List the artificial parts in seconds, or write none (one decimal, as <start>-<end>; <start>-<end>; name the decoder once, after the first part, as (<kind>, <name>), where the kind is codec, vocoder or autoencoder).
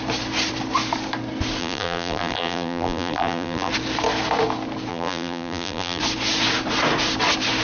1.6-3.7 (vocoder, BigVGAN v2); 4.9-6.0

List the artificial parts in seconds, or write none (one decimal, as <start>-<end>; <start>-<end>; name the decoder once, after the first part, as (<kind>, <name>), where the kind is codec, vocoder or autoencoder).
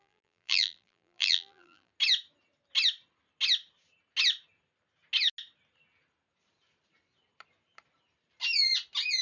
0.0-1.9 (vocoder, BigVGAN v2)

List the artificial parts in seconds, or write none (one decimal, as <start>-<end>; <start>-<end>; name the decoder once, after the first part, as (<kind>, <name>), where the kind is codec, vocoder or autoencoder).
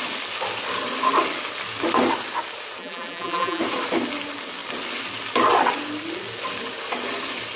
2.8-3.6 (vocoder, BigVGAN v2)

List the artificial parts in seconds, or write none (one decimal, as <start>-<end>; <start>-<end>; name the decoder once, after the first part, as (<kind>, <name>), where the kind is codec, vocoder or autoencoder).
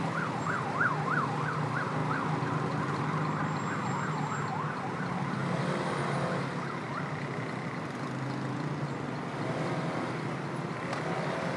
none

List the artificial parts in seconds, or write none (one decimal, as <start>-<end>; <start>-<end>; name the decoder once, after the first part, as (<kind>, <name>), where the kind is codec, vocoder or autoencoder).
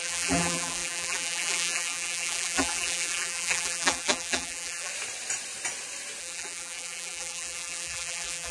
0.0-4.9 (vocoder, BigVGAN v2); 6.2-8.5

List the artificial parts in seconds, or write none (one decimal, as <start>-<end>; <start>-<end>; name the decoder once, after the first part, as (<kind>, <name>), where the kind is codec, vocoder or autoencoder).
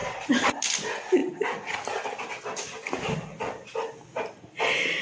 0.0-0.6 (vocoder, BigVGAN v2)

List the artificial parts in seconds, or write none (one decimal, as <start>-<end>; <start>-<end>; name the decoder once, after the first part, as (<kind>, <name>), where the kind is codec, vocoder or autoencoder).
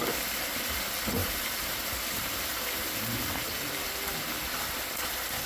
1.2-2.3 (vocoder, BigVGAN v2); 2.8-4.3